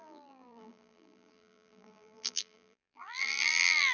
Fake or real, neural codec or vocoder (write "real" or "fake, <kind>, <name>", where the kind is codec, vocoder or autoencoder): fake, vocoder, BigVGAN v2